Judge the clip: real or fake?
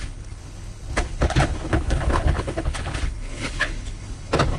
fake